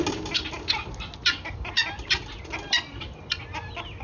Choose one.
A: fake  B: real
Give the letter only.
B